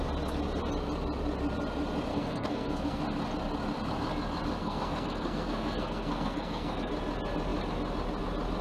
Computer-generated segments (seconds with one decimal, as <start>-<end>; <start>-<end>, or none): 2.1-3.0; 4.6-6.9